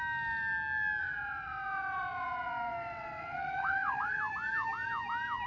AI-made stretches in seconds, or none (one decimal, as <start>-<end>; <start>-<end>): 1.0-4.2